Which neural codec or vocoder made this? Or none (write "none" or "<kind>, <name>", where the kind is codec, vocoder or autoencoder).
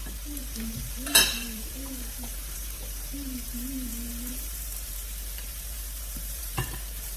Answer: vocoder, BigVGAN v2